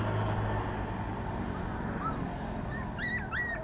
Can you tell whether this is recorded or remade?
recorded